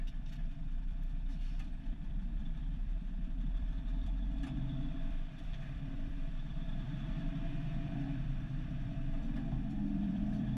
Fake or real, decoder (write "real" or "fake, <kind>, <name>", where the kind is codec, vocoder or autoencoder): fake, vocoder, BigVGAN v2